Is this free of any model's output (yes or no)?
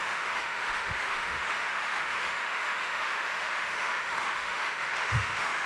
no